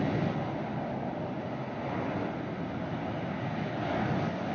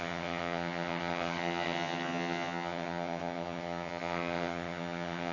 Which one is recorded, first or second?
first